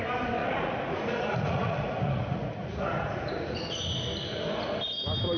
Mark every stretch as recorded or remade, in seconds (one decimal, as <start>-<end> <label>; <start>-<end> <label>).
0.0-0.4 recorded; 0.4-3.6 remade; 3.6-5.4 recorded